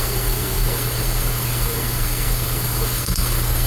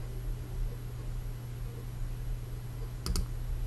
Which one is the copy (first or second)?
first